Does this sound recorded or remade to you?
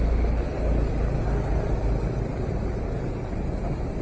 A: recorded